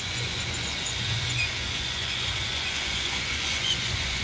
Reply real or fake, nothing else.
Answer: fake